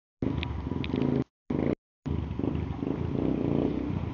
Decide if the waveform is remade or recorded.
recorded